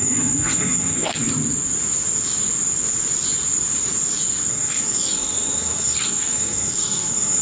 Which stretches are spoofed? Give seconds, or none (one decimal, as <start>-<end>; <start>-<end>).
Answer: 0.0-1.2; 4.5-7.4

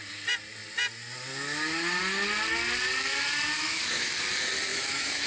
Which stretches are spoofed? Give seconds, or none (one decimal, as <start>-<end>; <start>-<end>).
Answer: 3.5-4.1; 4.7-5.3

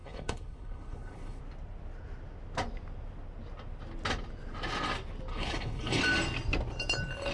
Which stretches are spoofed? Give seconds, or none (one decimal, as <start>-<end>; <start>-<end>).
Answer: 0.0-1.4; 5.3-6.0

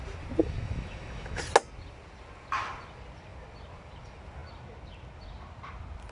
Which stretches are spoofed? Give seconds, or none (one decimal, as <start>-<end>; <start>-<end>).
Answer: 0.4-1.4

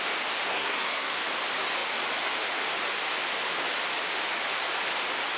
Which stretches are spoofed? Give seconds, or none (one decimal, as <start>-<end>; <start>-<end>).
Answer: 0.5-1.2

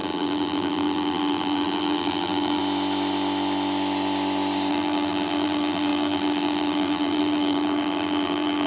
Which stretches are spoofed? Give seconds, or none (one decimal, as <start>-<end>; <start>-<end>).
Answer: 0.0-2.6; 4.7-8.7

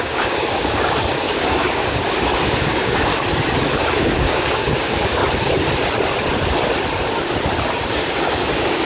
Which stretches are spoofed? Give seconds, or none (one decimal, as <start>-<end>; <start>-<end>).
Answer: 0.0-3.1; 3.8-5.2; 7.9-8.9